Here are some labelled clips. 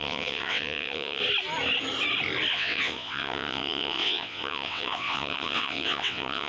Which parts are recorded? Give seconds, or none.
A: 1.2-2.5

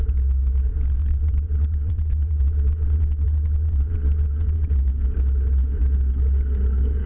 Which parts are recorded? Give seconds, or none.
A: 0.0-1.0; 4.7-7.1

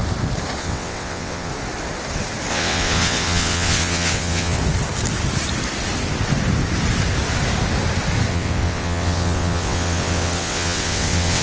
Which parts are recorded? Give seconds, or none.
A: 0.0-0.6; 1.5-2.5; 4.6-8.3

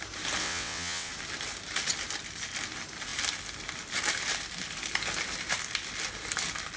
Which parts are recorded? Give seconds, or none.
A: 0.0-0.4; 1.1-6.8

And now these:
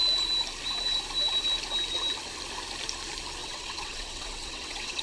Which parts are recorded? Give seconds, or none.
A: 0.0-3.4

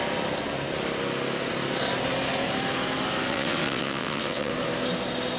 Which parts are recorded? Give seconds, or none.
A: 0.0-3.3; 4.5-5.4